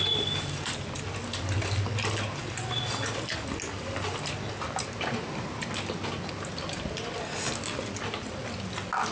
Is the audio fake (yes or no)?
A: no